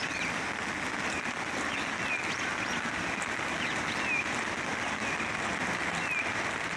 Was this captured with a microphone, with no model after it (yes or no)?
yes